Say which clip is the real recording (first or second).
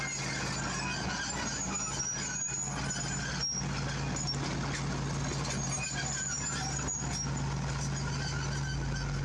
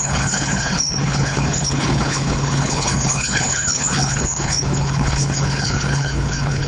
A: first